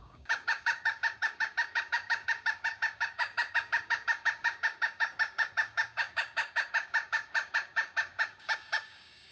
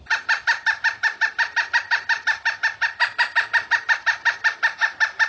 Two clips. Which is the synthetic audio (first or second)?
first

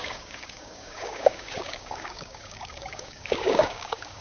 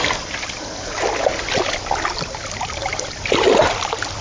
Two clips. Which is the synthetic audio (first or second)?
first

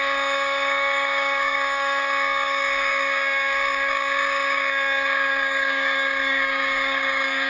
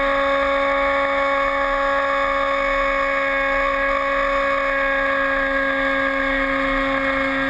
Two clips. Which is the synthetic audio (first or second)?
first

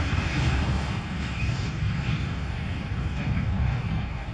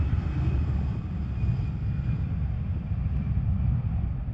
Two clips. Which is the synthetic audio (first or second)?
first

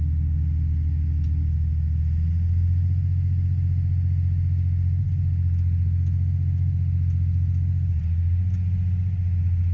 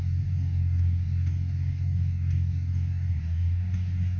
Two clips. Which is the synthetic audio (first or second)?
second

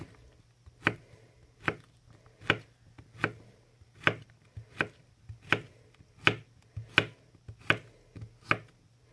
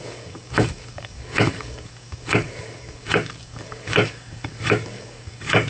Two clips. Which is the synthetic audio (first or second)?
second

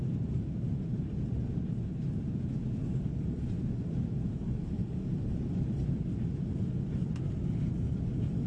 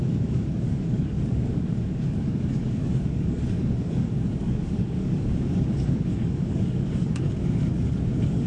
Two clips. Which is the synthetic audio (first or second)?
second